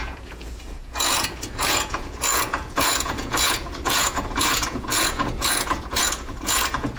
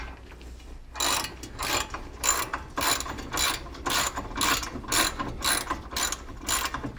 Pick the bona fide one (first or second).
second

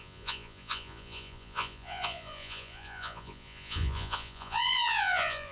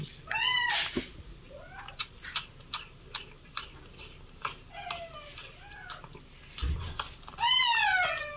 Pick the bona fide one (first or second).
second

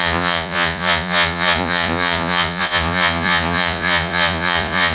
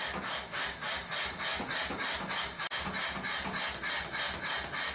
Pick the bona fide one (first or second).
second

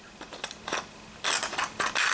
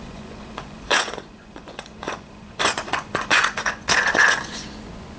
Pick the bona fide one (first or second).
first